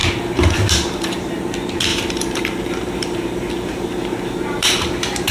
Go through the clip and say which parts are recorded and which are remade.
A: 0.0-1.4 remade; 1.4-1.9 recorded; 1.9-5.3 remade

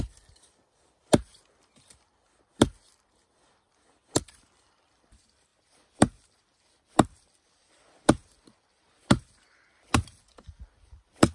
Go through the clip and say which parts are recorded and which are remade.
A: 0.0-1.3 remade; 1.3-4.3 recorded; 4.3-8.2 remade; 8.2-9.7 recorded; 9.7-11.3 remade

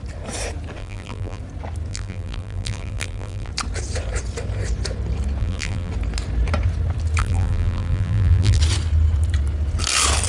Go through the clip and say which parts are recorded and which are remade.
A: 0.0-0.8 recorded; 0.8-1.4 remade; 1.4-1.9 recorded; 1.9-3.5 remade; 3.5-5.4 recorded; 5.4-5.9 remade; 5.9-7.2 recorded; 7.2-8.6 remade; 8.6-10.3 recorded